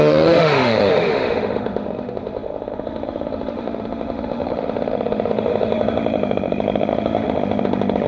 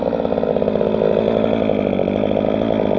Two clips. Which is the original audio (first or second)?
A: second